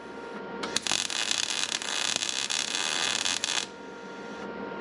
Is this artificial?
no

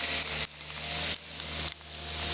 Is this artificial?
no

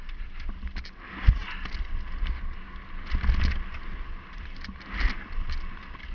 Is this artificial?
no